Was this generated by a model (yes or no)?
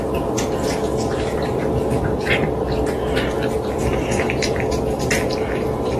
no